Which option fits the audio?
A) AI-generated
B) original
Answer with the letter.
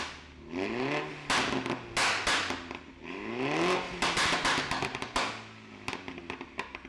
B